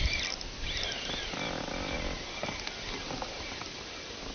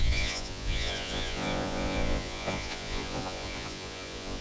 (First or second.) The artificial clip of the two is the second